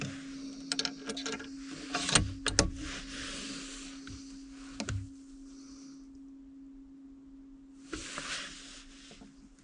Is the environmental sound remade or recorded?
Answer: recorded